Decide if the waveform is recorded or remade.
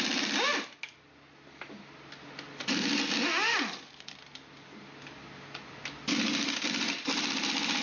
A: recorded